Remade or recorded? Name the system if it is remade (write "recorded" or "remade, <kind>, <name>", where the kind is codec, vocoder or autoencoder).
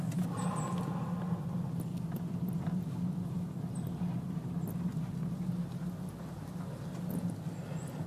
recorded